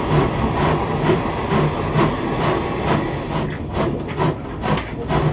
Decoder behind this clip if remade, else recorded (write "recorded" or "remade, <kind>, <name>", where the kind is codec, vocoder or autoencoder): recorded